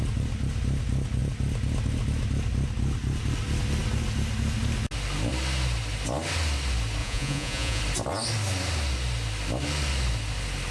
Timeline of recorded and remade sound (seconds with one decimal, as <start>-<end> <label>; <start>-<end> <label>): 0.0-7.0 recorded; 7.0-7.8 remade; 7.8-10.7 recorded